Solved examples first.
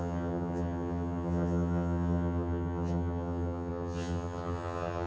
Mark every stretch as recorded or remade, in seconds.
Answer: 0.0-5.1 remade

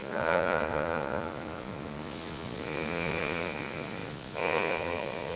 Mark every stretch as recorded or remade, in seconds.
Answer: 0.0-5.4 remade